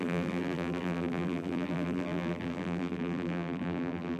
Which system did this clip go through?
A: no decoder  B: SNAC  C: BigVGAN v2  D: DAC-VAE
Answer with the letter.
C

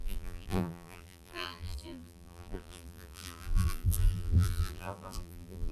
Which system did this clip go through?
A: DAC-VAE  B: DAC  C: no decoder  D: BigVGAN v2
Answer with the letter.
D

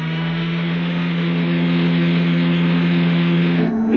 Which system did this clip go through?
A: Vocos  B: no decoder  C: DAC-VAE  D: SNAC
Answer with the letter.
C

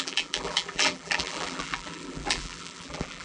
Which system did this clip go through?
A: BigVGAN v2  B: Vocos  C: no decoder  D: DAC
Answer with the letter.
A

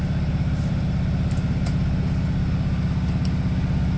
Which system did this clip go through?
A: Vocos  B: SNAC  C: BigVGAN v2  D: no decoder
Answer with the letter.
D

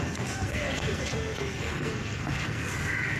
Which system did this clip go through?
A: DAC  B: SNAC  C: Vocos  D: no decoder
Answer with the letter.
B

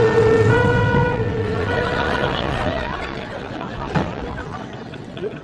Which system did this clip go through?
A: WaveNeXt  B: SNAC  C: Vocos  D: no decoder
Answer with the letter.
A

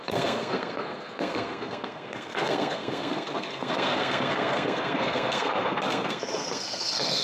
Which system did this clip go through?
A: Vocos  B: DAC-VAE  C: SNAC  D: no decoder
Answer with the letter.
C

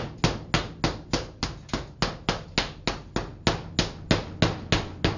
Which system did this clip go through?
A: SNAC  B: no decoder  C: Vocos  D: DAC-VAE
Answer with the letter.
B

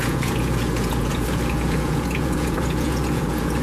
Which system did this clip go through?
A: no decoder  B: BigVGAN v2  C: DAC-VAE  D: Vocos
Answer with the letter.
D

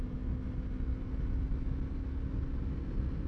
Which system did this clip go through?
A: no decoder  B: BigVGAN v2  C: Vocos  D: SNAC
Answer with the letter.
A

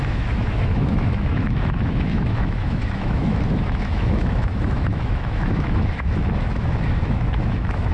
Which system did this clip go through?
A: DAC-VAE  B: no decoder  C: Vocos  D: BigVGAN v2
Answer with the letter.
A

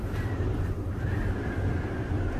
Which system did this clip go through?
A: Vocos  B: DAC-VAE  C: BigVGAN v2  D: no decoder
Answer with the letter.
C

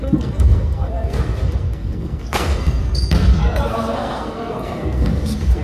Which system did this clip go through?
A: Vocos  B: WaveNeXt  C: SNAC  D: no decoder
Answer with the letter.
C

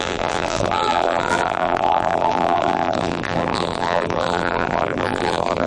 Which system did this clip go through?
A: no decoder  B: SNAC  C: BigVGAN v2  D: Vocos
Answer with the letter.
C